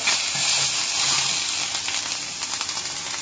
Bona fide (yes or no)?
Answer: yes